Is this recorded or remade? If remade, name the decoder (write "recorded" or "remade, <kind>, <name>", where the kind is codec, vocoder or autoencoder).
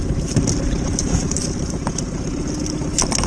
recorded